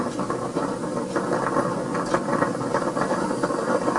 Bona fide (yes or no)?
yes